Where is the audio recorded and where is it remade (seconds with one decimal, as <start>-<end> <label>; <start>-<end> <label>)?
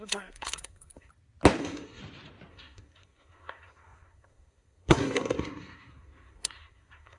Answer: 0.0-1.1 remade; 1.1-1.6 recorded; 1.6-2.0 remade; 2.0-2.5 recorded; 2.5-7.2 remade